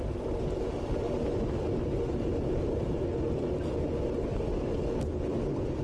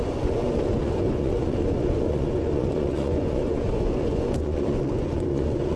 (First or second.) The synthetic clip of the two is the second